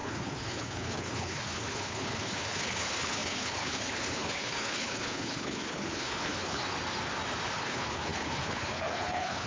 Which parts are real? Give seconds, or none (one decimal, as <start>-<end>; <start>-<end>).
6.6-7.5